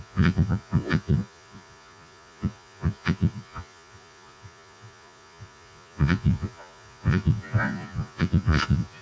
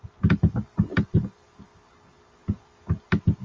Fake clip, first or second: first